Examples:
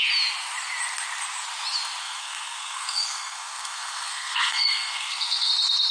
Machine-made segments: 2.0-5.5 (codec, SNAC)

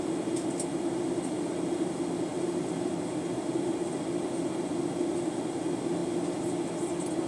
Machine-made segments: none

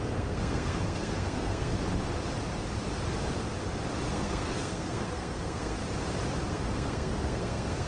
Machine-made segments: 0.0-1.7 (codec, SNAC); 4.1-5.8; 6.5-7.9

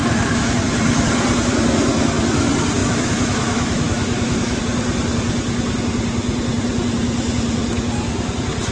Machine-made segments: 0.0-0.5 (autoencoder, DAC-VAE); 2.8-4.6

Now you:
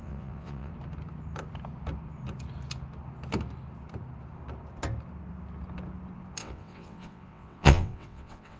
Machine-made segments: 0.0-0.7 (vocoder, WaveNeXt); 6.4-8.6

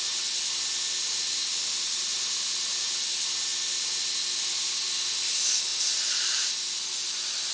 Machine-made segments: none